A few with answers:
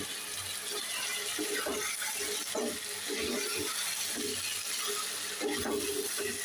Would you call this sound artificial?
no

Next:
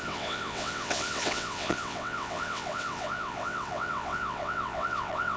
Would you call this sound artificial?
yes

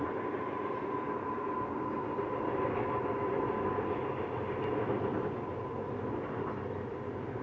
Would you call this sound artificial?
no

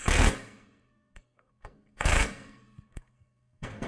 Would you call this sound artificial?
yes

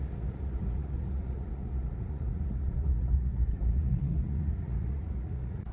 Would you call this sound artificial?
yes